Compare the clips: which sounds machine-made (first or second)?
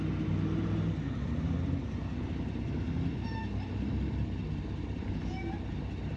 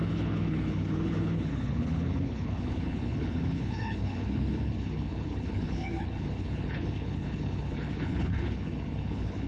second